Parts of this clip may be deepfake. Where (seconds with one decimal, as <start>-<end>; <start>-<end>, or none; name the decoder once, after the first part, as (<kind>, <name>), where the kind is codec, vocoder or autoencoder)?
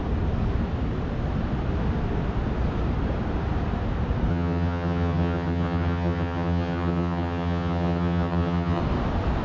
4.3-8.8 (vocoder, HiFi-GAN)